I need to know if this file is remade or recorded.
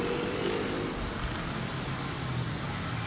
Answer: recorded